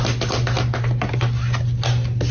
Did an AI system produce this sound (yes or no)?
no